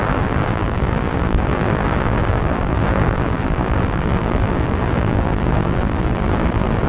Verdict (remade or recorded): remade